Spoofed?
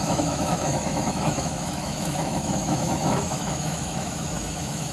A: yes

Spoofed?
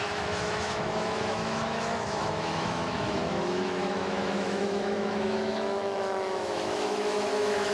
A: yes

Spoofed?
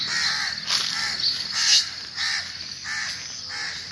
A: no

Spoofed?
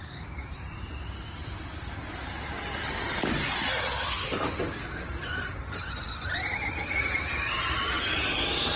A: no